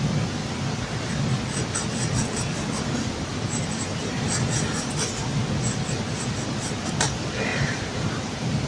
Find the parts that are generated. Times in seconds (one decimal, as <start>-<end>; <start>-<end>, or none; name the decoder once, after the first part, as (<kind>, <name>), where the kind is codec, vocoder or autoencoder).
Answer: 0.4-1.0 (vocoder, BigVGAN v2); 3.3-4.1; 7.5-8.1

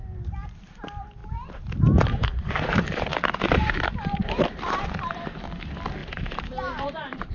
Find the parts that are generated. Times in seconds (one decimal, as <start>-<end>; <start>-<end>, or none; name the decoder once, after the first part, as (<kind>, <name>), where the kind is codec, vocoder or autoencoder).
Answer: 1.2-5.2 (vocoder, BigVGAN v2); 6.0-7.3

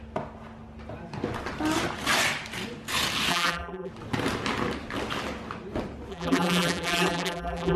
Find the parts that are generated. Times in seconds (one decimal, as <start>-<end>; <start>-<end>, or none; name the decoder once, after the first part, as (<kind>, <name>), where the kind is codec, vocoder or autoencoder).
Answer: 3.3-3.9 (vocoder, BigVGAN v2); 6.1-7.8

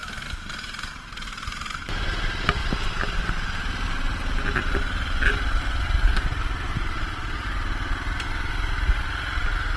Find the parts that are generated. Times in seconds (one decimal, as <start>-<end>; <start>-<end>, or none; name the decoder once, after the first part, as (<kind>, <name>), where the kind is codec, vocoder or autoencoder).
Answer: 0.0-1.8 (vocoder, BigVGAN v2); 2.6-3.3; 4.6-5.7